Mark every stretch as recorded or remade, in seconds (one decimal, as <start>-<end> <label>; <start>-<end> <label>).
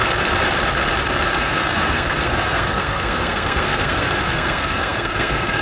0.0-1.4 recorded; 1.4-5.6 remade